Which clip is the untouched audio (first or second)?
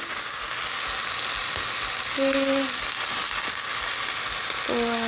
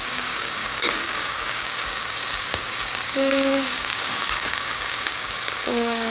first